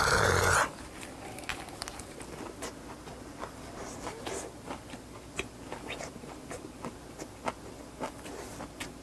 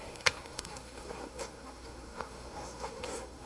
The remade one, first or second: second